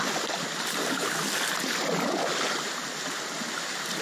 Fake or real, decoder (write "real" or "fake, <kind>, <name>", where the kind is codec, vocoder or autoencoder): real